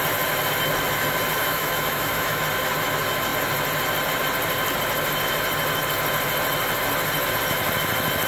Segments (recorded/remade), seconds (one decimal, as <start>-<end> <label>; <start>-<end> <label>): 0.0-1.4 recorded; 1.4-2.4 remade; 2.4-8.3 recorded